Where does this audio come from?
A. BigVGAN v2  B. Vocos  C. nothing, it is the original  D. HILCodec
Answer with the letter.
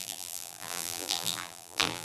A